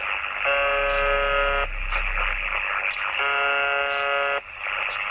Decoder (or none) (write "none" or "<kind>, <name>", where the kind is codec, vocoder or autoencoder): none